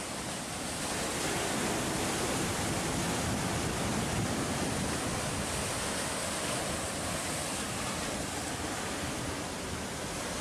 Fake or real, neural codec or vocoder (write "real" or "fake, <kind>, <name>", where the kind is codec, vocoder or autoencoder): real